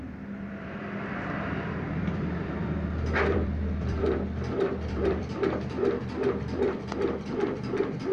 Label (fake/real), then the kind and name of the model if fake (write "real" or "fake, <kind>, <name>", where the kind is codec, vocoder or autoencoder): fake, vocoder, BigVGAN v2